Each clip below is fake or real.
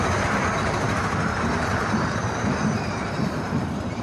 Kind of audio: fake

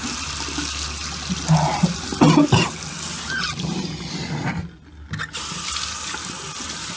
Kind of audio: real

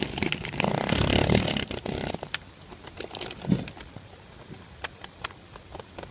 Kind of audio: real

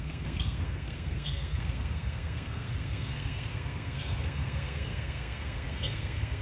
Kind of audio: fake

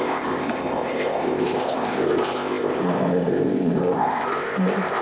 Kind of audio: fake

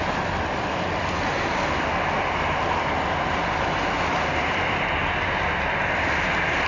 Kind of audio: real